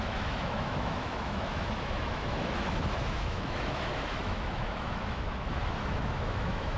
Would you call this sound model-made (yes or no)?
yes